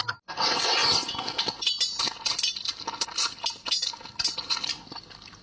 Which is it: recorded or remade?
recorded